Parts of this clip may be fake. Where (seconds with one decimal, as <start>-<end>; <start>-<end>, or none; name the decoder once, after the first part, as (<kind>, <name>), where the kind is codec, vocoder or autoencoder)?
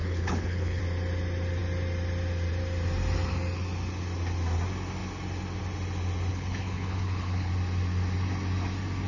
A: 0.0-0.8 (codec, HILCodec); 6.3-7.5